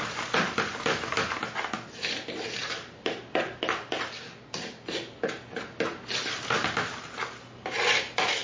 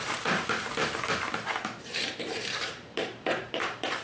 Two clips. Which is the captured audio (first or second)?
first